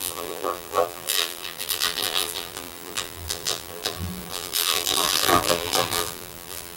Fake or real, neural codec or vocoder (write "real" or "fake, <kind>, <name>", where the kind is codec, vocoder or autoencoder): fake, vocoder, BigVGAN v2